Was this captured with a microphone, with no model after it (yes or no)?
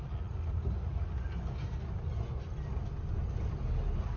yes